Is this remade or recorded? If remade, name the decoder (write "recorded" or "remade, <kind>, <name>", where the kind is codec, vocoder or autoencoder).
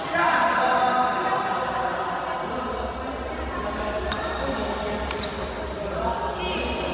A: recorded